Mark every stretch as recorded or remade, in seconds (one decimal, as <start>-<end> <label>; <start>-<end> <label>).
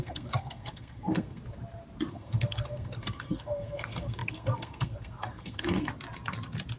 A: 0.0-1.4 remade; 1.4-2.1 recorded; 2.1-5.9 remade; 5.9-6.8 recorded